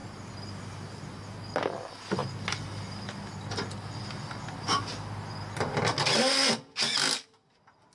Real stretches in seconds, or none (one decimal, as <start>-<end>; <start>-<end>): 0.0-7.9